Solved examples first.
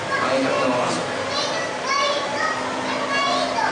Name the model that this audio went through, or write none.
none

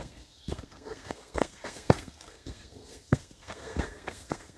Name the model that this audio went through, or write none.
codec, SNAC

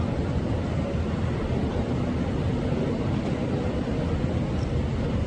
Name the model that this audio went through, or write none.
none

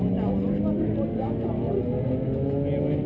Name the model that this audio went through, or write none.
none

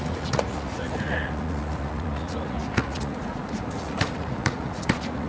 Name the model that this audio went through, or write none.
vocoder, Vocos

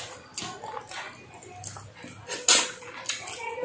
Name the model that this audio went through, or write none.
none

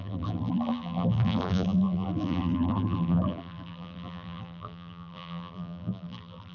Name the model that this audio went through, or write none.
vocoder, BigVGAN v2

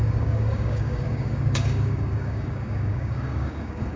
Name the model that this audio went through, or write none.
codec, DAC